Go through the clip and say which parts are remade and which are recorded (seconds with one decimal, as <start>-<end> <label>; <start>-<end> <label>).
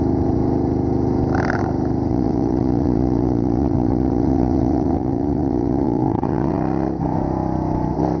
0.0-2.1 recorded; 2.1-6.5 remade; 6.5-8.2 recorded